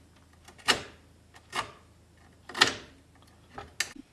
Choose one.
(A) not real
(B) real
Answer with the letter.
B